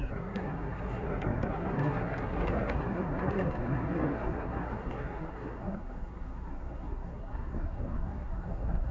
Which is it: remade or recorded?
remade